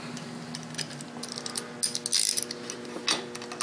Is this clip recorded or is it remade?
recorded